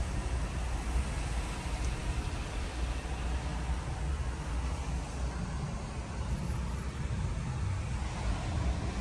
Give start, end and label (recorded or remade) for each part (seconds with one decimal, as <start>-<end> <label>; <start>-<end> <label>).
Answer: 0.0-9.0 recorded